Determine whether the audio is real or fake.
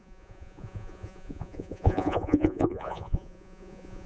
fake